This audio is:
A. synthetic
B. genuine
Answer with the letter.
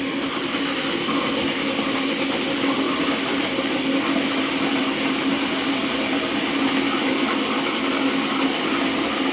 B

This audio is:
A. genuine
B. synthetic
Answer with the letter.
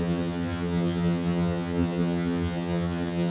B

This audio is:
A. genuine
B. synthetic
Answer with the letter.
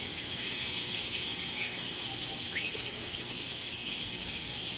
B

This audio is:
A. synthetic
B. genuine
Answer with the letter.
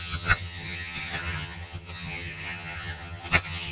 A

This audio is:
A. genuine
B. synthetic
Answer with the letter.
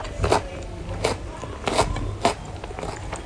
B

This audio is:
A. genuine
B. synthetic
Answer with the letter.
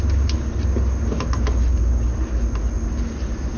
A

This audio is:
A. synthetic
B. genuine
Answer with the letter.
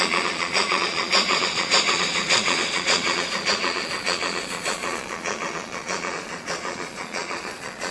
A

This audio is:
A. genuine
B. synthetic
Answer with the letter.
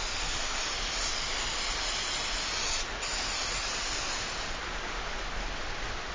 A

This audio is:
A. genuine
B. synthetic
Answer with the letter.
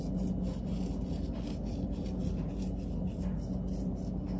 A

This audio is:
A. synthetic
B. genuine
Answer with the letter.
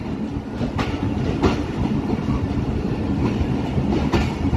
B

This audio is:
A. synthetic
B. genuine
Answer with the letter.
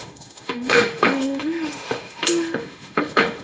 A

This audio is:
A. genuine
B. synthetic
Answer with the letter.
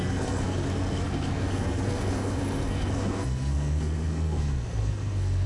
B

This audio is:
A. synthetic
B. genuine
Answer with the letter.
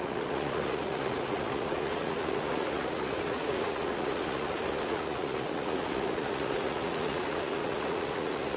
A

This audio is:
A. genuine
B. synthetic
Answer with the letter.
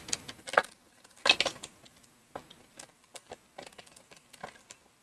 A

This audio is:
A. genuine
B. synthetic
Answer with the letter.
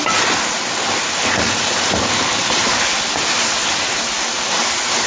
A